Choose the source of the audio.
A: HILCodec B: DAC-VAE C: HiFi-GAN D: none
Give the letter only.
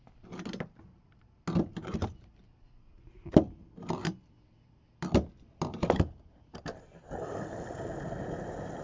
D